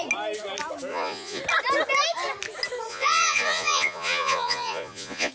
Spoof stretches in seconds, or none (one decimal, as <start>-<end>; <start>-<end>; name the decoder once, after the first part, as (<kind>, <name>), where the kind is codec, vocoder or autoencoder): 0.9-1.4 (vocoder, Vocos); 2.9-5.3